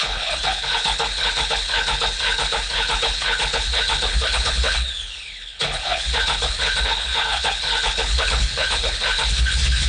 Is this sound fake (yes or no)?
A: yes